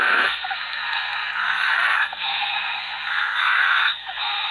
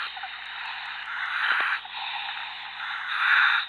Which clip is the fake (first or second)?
first